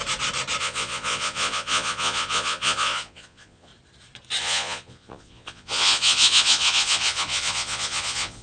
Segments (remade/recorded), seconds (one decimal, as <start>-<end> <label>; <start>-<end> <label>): 0.0-0.6 recorded; 0.6-3.7 remade; 3.7-4.4 recorded; 4.4-8.4 remade